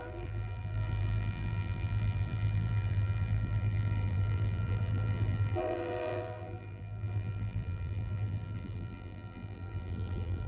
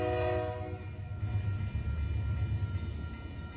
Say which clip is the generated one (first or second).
first